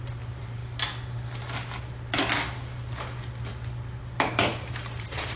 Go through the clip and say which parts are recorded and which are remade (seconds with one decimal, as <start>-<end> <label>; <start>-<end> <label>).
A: 0.0-0.6 remade; 0.6-1.9 recorded; 1.9-3.5 remade; 3.5-4.0 recorded; 4.0-5.4 remade